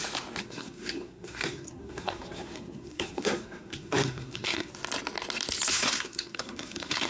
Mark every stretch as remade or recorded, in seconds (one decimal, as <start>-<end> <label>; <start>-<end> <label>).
0.0-0.4 recorded; 0.4-4.7 remade; 4.7-5.7 recorded; 5.7-7.1 remade